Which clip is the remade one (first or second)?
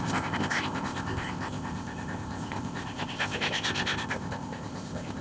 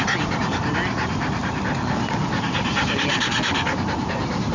first